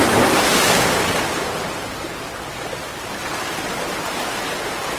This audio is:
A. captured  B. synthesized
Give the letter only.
A